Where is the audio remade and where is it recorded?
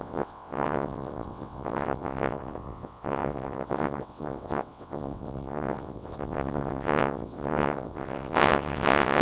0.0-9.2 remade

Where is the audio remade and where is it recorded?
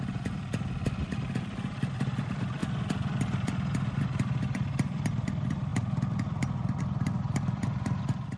0.0-8.4 recorded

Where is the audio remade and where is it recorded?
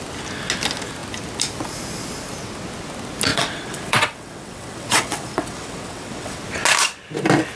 0.0-3.3 recorded; 3.3-6.4 remade; 6.4-7.5 recorded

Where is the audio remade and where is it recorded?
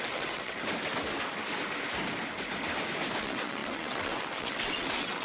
0.0-0.6 remade; 0.6-3.2 recorded; 3.2-5.2 remade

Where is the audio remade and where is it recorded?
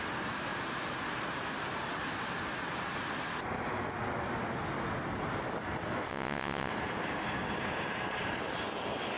0.0-6.1 recorded; 6.1-6.7 remade; 6.7-9.2 recorded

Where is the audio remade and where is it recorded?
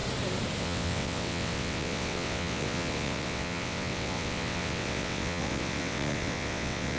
0.0-0.6 recorded; 0.6-7.0 remade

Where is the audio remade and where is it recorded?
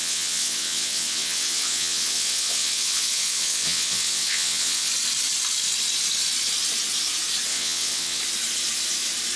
0.0-4.9 remade; 4.9-7.5 recorded; 7.5-8.2 remade; 8.2-9.4 recorded